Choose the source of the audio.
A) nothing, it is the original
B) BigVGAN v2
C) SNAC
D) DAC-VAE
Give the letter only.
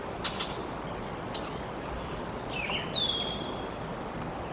A